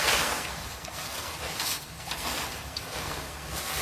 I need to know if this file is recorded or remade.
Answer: remade